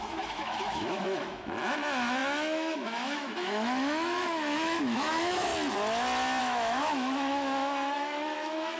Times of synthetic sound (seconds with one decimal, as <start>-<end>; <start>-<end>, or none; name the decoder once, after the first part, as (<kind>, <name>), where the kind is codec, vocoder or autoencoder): 0.0-5.5 (autoencoder, DAC-VAE); 6.4-8.8

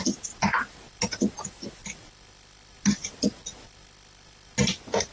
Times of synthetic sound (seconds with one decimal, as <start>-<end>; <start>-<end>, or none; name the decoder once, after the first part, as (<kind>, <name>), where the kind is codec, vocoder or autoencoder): none

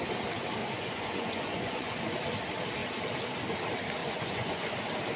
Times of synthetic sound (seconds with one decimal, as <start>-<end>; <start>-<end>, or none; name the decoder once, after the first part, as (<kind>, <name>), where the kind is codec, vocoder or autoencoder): 0.6-1.9 (vocoder, Vocos); 4.0-4.7